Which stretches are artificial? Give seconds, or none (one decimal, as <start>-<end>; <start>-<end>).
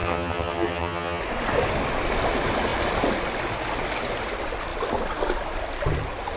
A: 0.0-1.2